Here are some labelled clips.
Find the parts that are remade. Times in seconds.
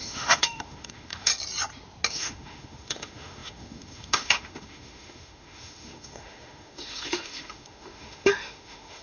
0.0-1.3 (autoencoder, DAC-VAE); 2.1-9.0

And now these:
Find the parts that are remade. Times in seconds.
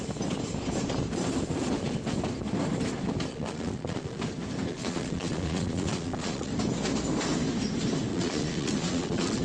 3.3-4.2 (vocoder, Vocos); 4.7-6.5; 8.1-9.4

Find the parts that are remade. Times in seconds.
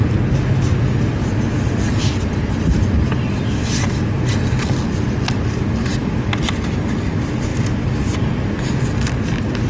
none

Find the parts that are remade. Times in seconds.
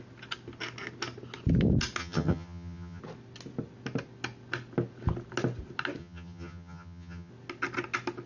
2.0-3.0 (vocoder, HiFi-GAN); 6.0-7.3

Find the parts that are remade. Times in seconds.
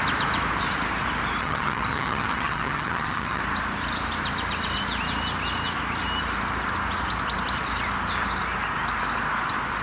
1.4-3.4 (vocoder, HiFi-GAN)